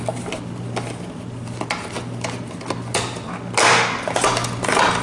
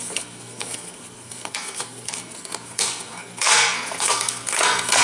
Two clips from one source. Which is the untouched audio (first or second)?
first